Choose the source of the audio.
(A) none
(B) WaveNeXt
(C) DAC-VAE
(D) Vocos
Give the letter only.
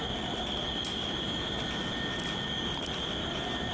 A